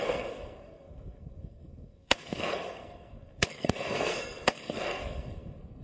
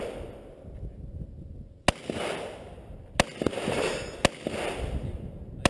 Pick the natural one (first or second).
second